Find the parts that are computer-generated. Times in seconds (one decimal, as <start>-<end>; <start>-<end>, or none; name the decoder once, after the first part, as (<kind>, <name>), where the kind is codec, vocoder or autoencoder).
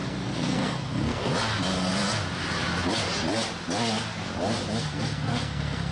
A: 0.0-1.3 (codec, SNAC); 4.8-5.9